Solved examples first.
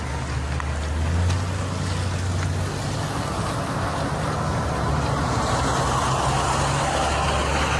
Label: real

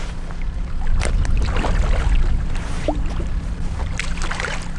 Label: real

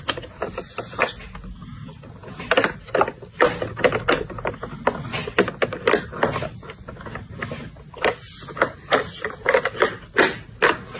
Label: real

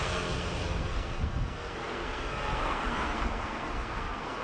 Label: fake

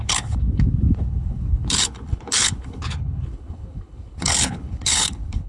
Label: fake